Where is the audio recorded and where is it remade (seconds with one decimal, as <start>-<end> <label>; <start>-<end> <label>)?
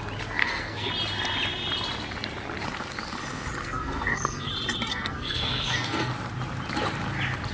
0.0-0.4 recorded; 0.4-0.9 remade; 0.9-3.6 recorded; 3.6-4.5 remade; 4.5-4.9 recorded; 4.9-6.1 remade; 6.1-7.5 recorded